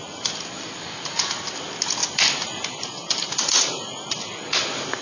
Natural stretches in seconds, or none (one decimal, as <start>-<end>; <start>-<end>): 0.0-5.0